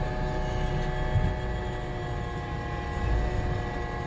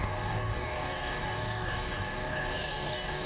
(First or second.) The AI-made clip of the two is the second